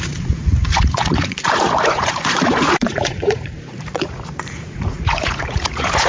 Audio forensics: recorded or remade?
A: remade